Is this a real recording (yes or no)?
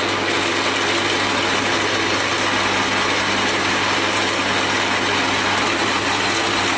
yes